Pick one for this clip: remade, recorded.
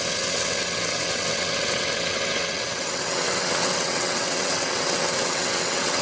remade